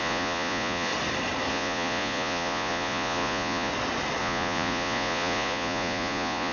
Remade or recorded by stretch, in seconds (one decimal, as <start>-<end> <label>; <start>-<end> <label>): 0.0-0.9 remade; 0.9-1.5 recorded; 1.5-3.7 remade; 3.7-4.2 recorded; 4.2-6.5 remade